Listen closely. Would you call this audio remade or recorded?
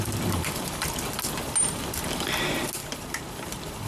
recorded